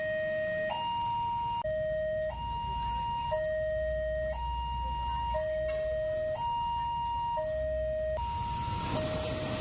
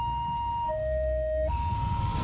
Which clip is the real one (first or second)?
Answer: first